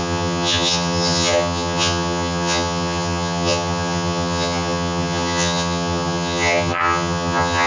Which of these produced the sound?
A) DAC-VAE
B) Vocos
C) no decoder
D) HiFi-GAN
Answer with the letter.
D